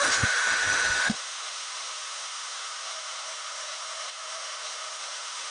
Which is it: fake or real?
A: fake